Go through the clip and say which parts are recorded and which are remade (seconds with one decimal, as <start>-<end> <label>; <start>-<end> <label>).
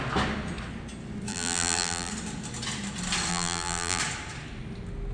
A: 0.0-1.3 recorded; 1.3-2.1 remade; 2.1-3.3 recorded; 3.3-4.0 remade; 4.0-5.1 recorded